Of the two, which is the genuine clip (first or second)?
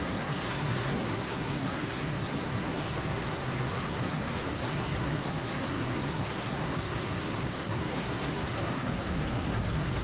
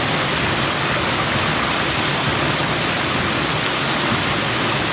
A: second